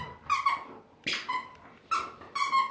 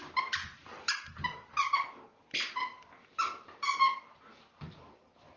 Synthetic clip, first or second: second